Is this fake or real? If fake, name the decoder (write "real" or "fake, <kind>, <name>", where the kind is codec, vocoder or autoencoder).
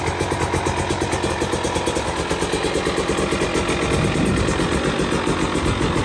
real